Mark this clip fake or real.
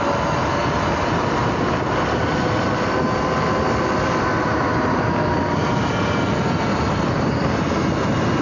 real